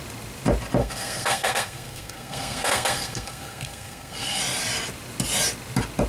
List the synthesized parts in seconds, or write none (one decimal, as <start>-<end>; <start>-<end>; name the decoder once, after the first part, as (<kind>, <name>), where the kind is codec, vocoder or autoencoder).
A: 0.8-4.4 (codec, SNAC)